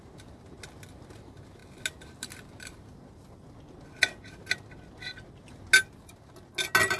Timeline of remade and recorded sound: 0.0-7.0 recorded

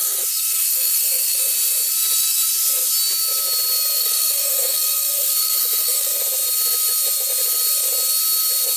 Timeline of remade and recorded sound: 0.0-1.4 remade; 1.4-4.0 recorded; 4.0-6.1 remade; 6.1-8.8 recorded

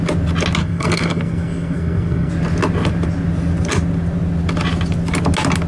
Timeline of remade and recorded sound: 0.0-0.6 recorded; 0.6-2.3 remade; 2.3-5.7 recorded

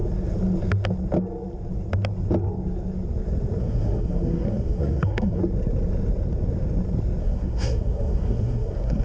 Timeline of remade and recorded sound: 0.0-3.6 recorded; 3.6-5.4 remade; 5.4-7.2 recorded; 7.2-9.0 remade

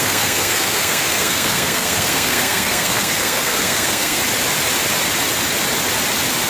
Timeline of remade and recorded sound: 0.0-4.2 remade; 4.2-6.5 recorded